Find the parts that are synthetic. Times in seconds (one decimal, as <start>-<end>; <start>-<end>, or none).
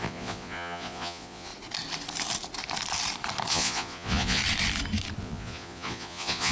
0.0-1.5; 3.5-4.4; 5.2-6.5